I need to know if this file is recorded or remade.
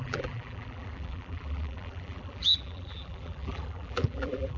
remade